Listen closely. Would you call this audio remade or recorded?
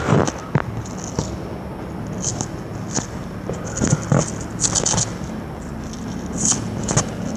recorded